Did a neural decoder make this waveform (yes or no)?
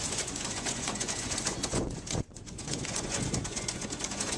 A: yes